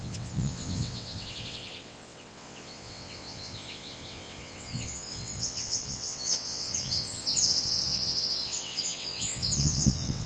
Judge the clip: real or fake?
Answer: fake